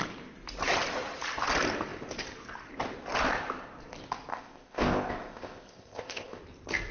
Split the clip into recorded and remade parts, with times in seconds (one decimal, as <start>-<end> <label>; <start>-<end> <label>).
0.0-4.3 recorded; 4.3-6.4 remade; 6.4-6.9 recorded